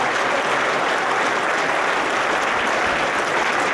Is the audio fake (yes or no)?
yes